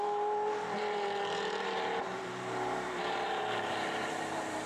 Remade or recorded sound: remade